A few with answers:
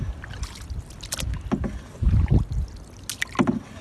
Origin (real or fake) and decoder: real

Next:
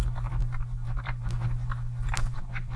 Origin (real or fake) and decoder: real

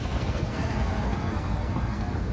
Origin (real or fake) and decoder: fake, codec, SNAC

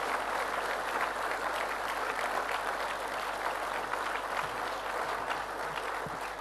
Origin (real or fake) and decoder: real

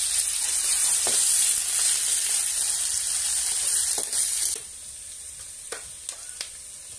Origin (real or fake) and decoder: real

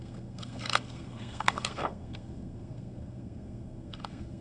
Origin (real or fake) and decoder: fake, codec, SNAC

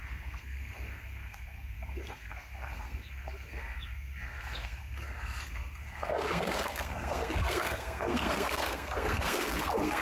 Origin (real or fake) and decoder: fake, codec, SNAC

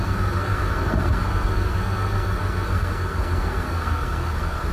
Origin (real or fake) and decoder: fake, codec, SNAC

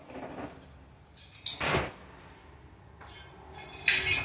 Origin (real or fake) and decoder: real